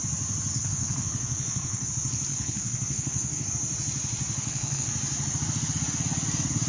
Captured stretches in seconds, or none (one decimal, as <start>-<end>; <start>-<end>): 0.0-0.5; 1.9-2.3; 3.5-4.4; 4.9-6.7